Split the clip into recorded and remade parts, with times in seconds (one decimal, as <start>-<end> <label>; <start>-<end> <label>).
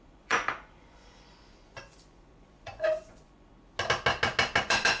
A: 0.0-3.5 remade; 3.5-4.6 recorded; 4.6-5.0 remade